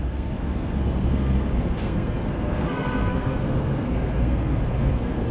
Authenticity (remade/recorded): remade